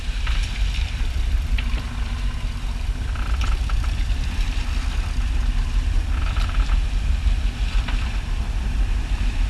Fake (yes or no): yes